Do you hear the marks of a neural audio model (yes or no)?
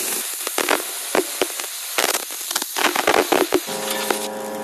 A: no